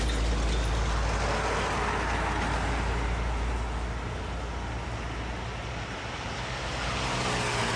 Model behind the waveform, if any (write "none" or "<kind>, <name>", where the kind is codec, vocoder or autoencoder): none